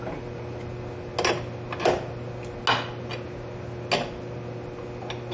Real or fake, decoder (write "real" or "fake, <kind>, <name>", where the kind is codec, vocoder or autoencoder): real